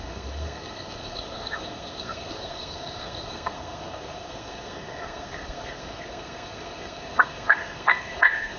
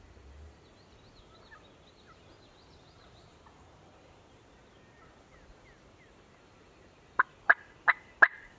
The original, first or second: second